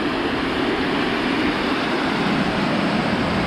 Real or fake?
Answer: real